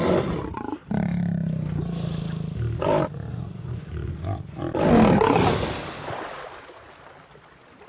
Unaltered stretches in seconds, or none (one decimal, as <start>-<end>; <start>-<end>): 0.0-3.3; 4.6-7.9